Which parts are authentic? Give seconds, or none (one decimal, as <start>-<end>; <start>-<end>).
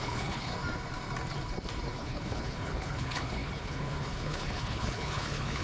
0.5-1.9